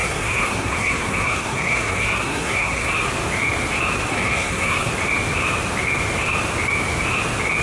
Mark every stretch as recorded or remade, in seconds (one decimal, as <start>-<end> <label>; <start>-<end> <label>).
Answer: 0.0-2.9 remade; 2.9-4.1 recorded; 4.1-4.9 remade; 4.9-7.6 recorded